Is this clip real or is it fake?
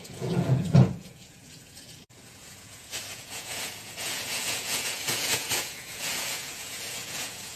fake